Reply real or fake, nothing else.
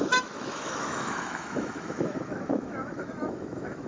fake